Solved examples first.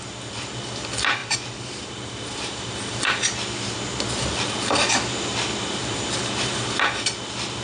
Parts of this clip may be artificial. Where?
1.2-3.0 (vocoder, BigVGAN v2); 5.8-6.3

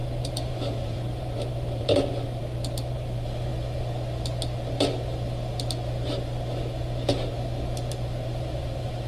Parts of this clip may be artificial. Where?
0.0-2.4 (vocoder, BigVGAN v2); 2.9-3.5; 8.3-9.1

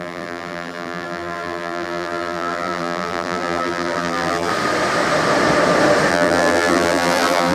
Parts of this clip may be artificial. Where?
0.0-4.5 (vocoder, BigVGAN v2); 6.1-7.5